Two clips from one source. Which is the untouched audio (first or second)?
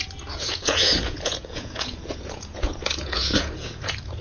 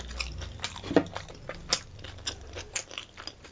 second